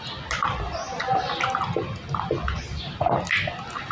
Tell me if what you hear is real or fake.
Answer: real